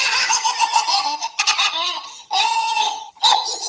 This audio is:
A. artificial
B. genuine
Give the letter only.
A